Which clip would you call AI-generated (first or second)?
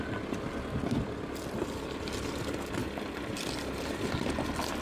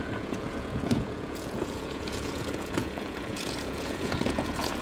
second